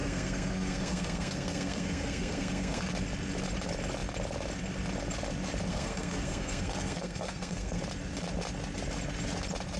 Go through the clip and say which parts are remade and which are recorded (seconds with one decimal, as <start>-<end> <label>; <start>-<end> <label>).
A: 0.0-2.9 remade; 2.9-5.7 recorded; 5.7-7.8 remade; 7.8-9.8 recorded